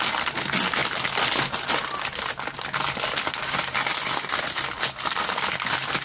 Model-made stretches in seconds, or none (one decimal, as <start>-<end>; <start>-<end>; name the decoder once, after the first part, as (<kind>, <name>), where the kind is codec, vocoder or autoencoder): none